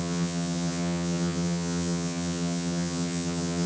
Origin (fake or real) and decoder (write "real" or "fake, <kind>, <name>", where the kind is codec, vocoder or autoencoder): fake, vocoder, HiFi-GAN